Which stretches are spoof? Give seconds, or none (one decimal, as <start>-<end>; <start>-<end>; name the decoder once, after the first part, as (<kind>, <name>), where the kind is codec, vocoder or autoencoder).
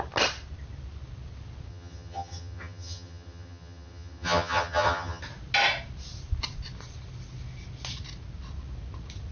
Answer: 1.7-5.2 (vocoder, HiFi-GAN)